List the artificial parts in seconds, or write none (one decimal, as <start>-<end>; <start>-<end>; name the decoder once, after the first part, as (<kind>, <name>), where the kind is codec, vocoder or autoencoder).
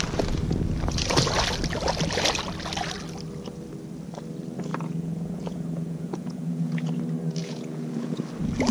4.7-7.0 (vocoder, Vocos); 7.4-8.2